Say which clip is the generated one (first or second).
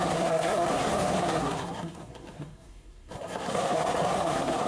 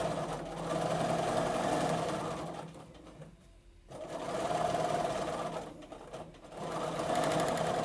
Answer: first